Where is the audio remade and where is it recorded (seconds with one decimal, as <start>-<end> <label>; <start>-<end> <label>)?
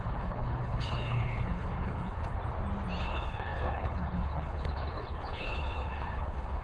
0.0-2.4 remade; 2.4-3.0 recorded; 3.0-6.6 remade